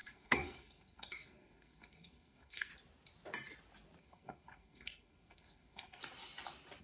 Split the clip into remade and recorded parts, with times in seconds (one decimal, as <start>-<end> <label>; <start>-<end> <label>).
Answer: 0.0-2.7 remade; 2.7-4.0 recorded; 4.0-6.0 remade; 6.0-6.8 recorded

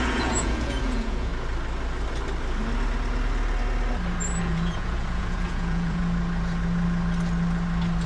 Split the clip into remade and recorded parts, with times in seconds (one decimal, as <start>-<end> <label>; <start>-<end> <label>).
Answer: 0.0-1.3 remade; 1.3-4.4 recorded; 4.4-6.0 remade; 6.0-8.1 recorded